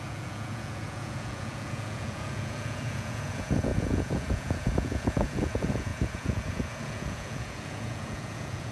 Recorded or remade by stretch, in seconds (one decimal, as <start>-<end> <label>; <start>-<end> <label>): 0.0-8.7 remade